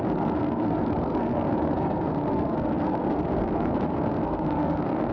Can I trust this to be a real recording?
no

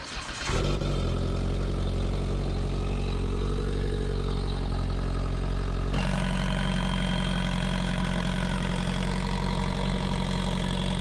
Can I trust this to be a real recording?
yes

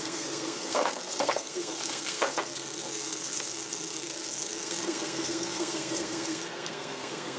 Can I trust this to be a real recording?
no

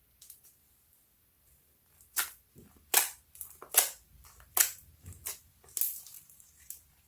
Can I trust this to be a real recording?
yes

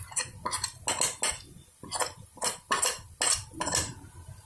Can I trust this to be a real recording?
yes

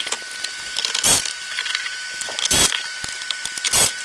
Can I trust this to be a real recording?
yes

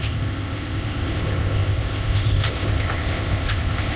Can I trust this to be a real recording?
no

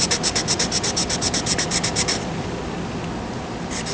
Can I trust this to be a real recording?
yes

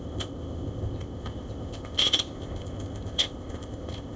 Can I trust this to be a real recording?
no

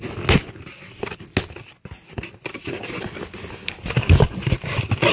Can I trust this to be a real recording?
yes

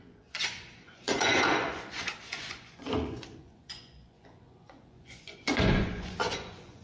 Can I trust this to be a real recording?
no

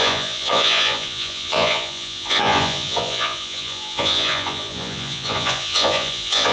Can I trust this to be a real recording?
no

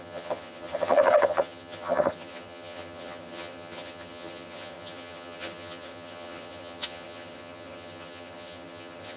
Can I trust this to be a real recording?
no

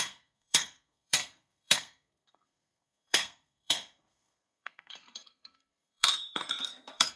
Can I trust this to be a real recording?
no